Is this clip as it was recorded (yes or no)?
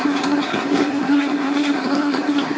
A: no